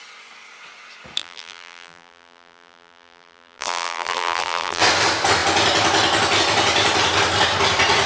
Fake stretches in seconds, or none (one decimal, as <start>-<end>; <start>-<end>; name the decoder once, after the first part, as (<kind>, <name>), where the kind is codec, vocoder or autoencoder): 1.2-4.8 (vocoder, BigVGAN v2)